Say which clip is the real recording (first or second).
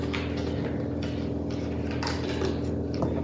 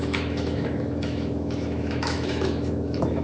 first